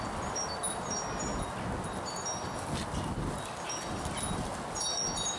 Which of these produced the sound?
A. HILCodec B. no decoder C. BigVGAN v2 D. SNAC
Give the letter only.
B